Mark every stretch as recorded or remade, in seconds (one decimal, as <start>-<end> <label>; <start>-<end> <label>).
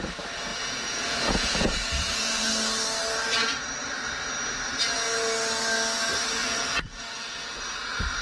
0.0-0.5 recorded; 0.5-2.5 remade; 2.5-6.4 recorded; 6.4-7.6 remade; 7.6-8.2 recorded